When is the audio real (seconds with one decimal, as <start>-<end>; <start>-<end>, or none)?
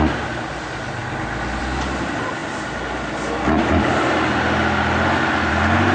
0.0-5.9